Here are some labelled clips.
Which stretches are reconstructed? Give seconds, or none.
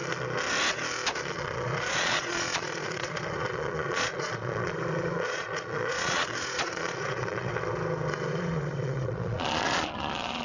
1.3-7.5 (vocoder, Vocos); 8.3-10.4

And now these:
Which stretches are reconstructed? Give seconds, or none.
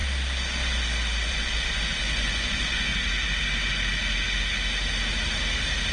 1.3-2.9 (vocoder, Vocos)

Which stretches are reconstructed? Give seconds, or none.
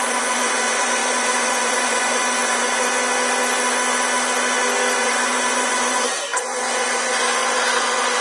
0.0-2.9 (vocoder, Vocos); 5.0-8.2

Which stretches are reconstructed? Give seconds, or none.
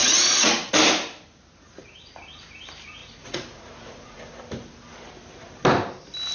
0.0-0.7 (vocoder, Vocos); 3.0-4.2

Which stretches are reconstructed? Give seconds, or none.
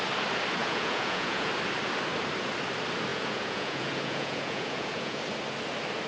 0.6-1.5 (vocoder, Vocos); 3.1-5.2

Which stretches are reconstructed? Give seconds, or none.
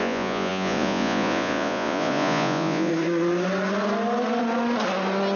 0.0-2.9 (vocoder, Vocos)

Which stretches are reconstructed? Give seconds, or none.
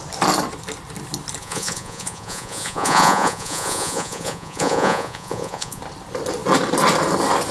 1.4-5.8 (vocoder, Vocos)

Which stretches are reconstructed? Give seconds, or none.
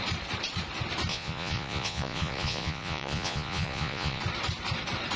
1.1-4.2 (vocoder, Vocos)